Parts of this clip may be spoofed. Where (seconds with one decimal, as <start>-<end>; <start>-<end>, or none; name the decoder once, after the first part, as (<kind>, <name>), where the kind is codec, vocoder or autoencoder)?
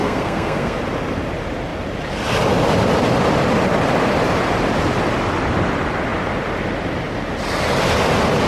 0.0-0.8 (codec, SNAC)